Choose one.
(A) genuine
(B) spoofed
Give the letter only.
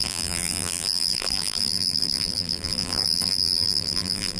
B